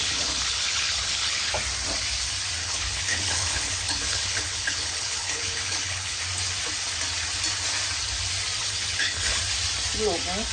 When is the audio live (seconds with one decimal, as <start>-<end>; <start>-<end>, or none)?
1.5-2.6; 6.2-8.6; 9.4-10.5